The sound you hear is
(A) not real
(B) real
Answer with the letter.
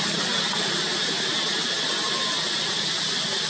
B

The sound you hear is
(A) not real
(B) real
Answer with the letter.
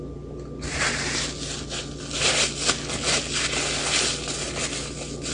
B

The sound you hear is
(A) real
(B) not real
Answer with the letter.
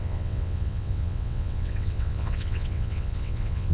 B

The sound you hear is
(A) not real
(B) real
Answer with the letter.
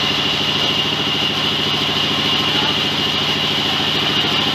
B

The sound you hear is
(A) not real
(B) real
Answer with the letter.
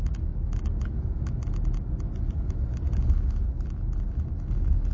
B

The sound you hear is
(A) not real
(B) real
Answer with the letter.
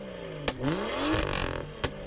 B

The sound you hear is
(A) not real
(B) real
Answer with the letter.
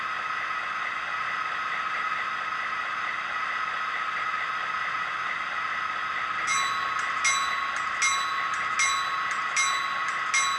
B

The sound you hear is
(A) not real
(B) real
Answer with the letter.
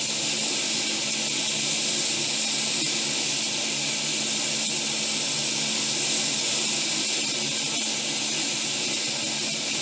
B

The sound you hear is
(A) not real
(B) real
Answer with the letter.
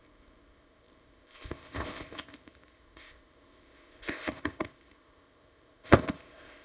A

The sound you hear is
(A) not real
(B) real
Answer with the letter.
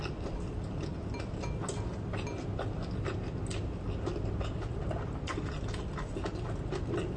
B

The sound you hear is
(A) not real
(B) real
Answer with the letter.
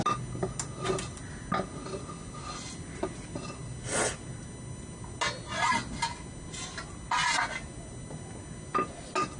B